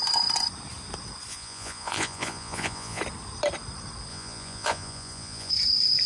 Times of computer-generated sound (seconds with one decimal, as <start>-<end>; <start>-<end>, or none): 1.3-3.0; 4.1-5.5